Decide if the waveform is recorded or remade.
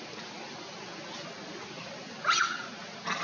recorded